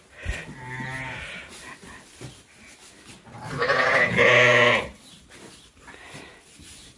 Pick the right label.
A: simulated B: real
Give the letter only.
B